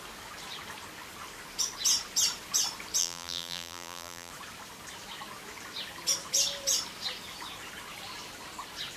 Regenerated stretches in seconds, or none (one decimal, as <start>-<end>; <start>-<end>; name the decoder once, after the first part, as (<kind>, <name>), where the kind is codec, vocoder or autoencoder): 3.0-4.3 (vocoder, BigVGAN v2)